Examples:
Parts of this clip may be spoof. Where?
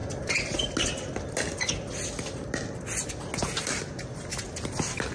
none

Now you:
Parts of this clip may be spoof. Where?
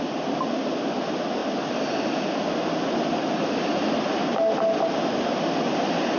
none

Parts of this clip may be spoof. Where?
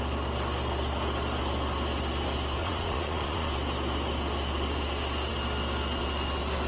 2.6-3.5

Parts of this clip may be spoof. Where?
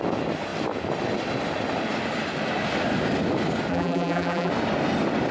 3.7-4.5